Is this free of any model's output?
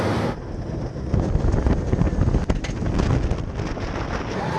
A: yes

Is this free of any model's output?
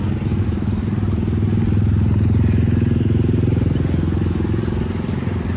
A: yes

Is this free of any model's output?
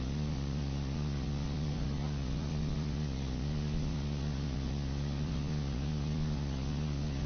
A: no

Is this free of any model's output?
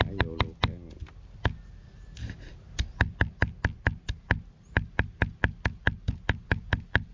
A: yes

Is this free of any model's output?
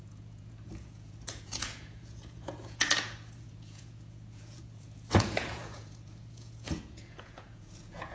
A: no